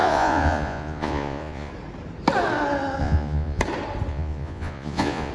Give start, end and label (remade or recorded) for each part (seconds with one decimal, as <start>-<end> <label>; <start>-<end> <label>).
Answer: 0.0-1.7 remade; 1.7-3.0 recorded; 3.0-3.6 remade; 3.6-4.1 recorded; 4.1-5.3 remade